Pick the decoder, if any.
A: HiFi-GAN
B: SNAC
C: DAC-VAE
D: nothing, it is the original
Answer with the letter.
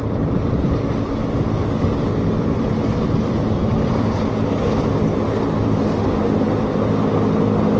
D